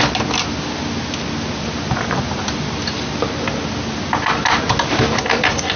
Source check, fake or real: real